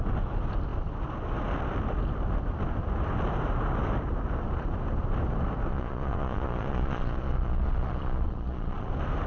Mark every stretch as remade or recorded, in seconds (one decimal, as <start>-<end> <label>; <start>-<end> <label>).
0.0-5.7 recorded; 5.7-8.9 remade; 8.9-9.3 recorded

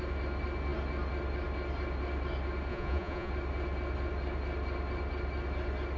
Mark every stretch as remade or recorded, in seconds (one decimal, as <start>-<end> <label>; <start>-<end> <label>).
0.0-2.7 recorded; 2.7-3.3 remade; 3.3-6.0 recorded

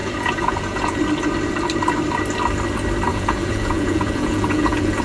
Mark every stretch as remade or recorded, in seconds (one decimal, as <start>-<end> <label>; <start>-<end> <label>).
0.0-1.0 remade; 1.0-3.1 recorded; 3.1-5.0 remade

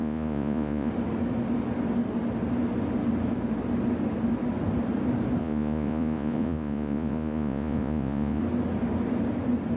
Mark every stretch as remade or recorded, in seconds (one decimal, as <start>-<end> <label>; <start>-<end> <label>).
0.0-0.9 remade; 0.9-5.4 recorded; 5.4-8.4 remade; 8.4-9.8 recorded

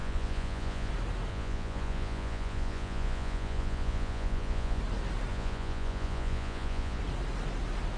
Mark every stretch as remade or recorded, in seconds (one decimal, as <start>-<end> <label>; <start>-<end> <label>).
0.0-0.9 remade; 0.9-1.3 recorded; 1.3-4.8 remade; 4.8-5.3 recorded; 5.3-7.0 remade; 7.0-8.0 recorded